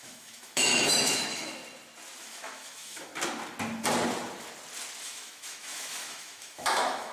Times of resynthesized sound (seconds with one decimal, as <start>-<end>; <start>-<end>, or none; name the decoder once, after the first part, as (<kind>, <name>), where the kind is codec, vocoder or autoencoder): 0.0-1.6 (autoencoder, DAC-VAE); 2.2-3.1; 5.0-7.1